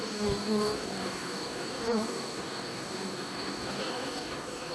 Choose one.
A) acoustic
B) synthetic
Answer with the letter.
B